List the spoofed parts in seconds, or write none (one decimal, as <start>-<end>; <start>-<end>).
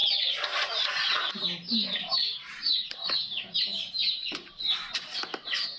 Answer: 1.3-5.8